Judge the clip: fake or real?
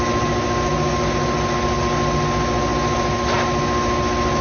real